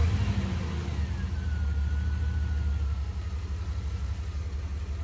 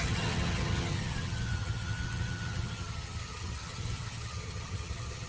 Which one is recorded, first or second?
first